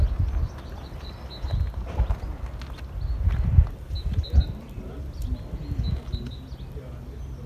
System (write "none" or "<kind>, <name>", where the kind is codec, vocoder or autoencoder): none